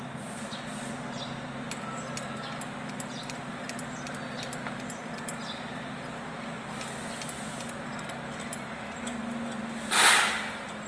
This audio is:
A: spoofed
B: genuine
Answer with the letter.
B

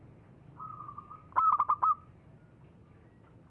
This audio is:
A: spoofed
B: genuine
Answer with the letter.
B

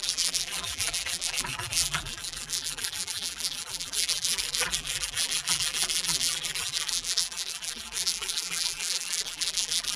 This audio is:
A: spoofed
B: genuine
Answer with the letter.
A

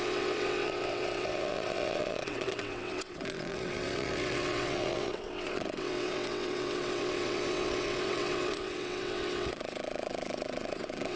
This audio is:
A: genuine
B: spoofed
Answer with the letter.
B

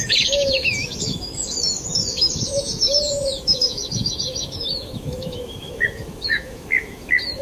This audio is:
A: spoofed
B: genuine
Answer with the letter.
A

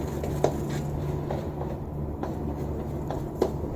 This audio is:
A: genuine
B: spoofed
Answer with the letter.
A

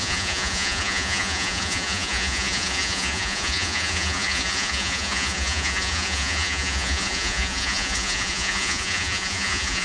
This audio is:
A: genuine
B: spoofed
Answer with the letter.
B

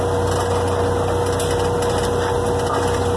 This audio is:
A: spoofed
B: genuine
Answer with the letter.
B